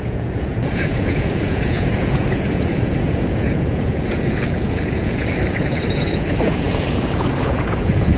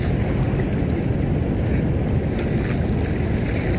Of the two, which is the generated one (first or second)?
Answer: first